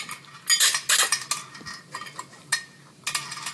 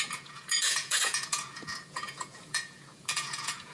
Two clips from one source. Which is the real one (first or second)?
first